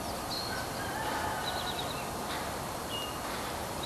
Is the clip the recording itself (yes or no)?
yes